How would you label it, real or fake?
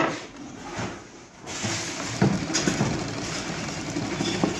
real